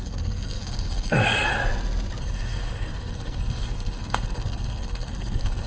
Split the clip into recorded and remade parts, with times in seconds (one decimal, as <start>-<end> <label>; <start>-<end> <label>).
0.0-1.5 remade; 1.5-2.2 recorded; 2.2-5.7 remade